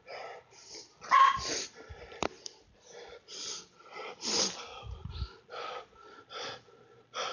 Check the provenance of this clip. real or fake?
real